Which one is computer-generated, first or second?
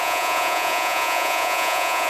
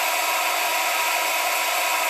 first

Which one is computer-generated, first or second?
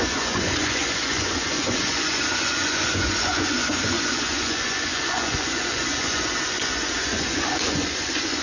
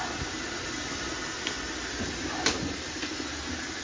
first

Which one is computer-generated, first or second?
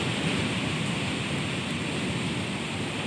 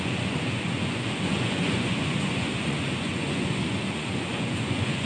second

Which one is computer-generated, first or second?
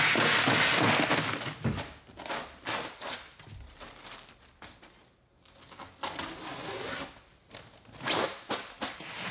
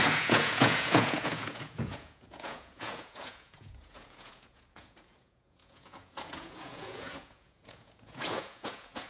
second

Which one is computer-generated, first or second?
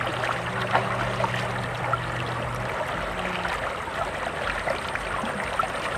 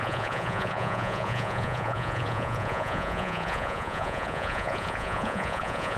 second